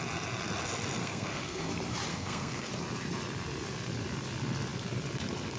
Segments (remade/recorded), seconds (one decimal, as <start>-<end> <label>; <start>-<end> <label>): 0.0-1.0 recorded; 1.0-1.7 remade; 1.7-2.1 recorded; 2.1-2.7 remade; 2.7-5.6 recorded